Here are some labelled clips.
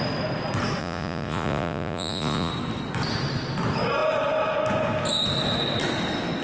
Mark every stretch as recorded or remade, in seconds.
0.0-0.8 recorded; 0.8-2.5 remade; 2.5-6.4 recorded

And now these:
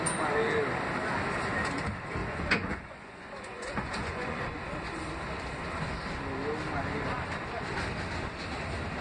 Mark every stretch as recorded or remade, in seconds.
0.0-2.2 recorded; 2.2-4.4 remade; 4.4-9.0 recorded

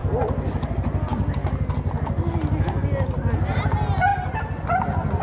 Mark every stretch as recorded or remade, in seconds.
0.0-5.2 recorded

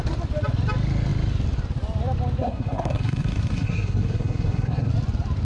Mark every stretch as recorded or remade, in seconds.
0.0-2.4 recorded; 2.4-4.9 remade; 4.9-5.4 recorded